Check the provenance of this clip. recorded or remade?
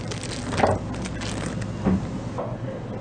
recorded